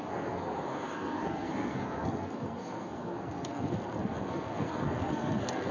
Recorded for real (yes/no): no